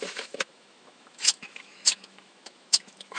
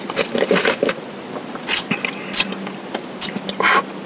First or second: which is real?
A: second